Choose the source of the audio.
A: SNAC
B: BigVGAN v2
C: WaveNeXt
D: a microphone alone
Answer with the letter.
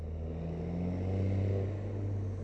D